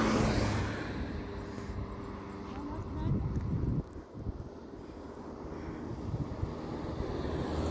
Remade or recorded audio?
recorded